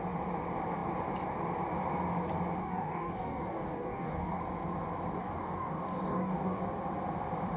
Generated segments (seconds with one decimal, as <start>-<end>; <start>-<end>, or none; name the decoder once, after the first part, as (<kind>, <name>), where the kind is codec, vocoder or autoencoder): 2.6-4.4 (codec, DAC); 5.2-6.6